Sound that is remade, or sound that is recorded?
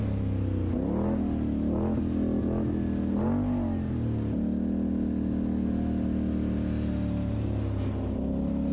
recorded